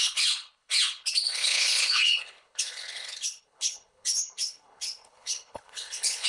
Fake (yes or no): yes